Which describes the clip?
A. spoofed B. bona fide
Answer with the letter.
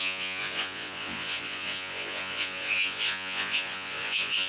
A